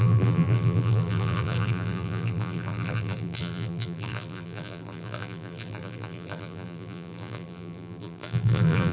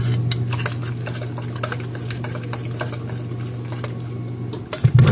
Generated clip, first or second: first